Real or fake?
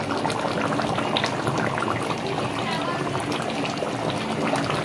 real